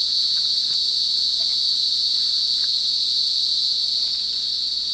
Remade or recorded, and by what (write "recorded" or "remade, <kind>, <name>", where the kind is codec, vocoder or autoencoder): remade, vocoder, Vocos